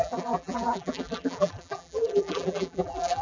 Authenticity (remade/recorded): remade